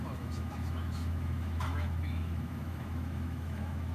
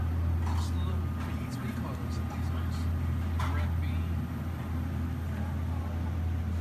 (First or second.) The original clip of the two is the second